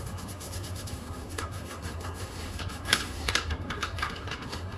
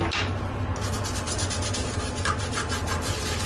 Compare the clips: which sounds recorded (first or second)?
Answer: second